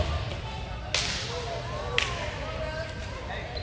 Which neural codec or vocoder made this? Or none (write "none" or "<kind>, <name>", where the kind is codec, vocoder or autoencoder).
none